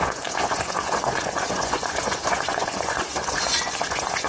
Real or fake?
fake